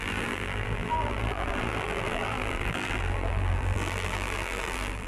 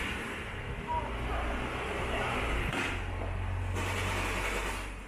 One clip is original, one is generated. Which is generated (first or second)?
first